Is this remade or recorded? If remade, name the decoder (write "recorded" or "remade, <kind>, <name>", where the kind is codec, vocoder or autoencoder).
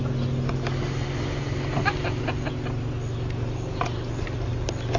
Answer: recorded